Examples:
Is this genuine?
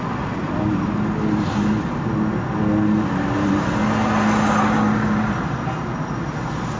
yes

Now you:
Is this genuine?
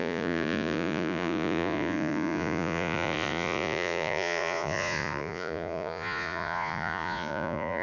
no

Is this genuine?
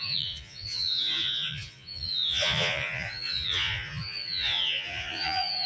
no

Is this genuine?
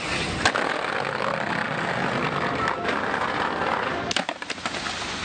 yes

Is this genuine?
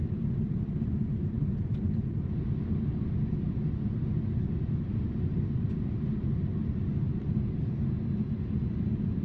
yes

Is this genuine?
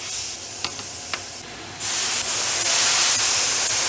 yes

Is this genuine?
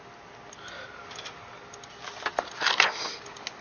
yes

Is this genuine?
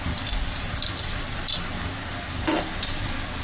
yes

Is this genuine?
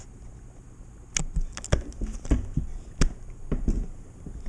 yes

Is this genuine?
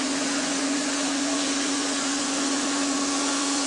no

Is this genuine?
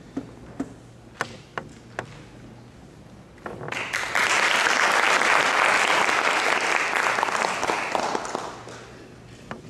yes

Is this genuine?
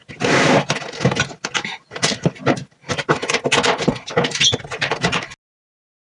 yes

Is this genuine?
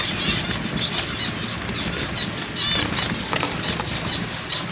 yes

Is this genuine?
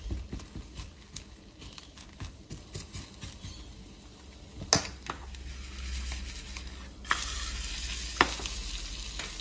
yes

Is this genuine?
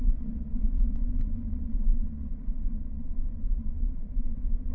no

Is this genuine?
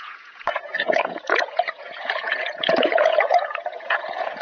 no